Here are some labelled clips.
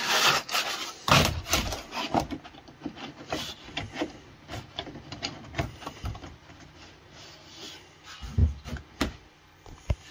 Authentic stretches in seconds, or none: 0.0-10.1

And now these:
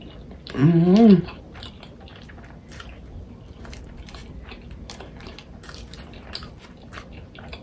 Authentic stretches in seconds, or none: 0.6-1.4; 2.1-3.7

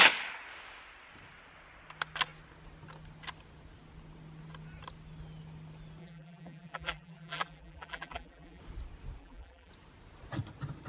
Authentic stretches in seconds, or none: 0.0-6.0; 8.6-9.2; 9.7-10.9